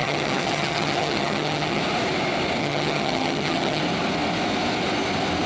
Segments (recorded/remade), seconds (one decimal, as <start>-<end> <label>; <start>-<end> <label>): 0.0-1.8 remade; 1.8-2.6 recorded; 2.6-3.8 remade; 3.8-5.5 recorded